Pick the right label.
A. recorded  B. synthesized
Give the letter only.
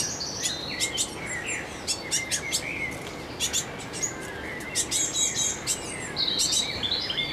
A